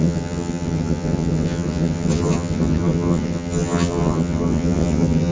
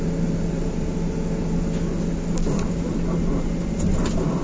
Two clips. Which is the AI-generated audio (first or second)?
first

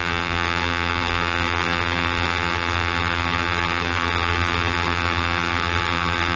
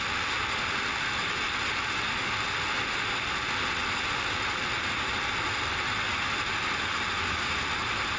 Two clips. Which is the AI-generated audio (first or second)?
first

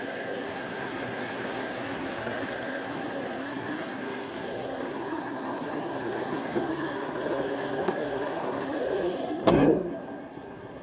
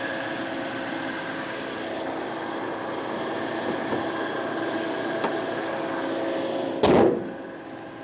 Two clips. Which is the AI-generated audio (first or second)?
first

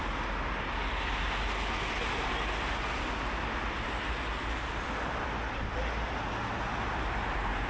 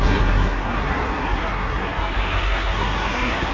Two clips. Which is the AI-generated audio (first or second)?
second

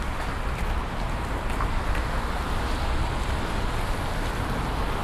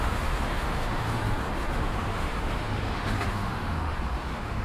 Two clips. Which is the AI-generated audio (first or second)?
second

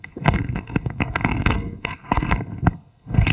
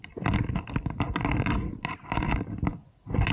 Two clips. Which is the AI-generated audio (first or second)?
first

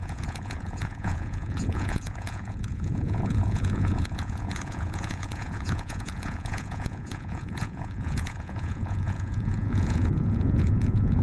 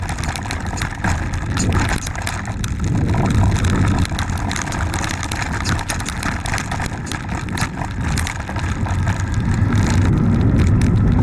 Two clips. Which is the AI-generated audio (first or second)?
first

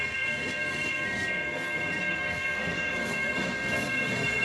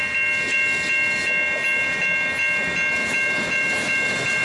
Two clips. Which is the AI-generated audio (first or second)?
first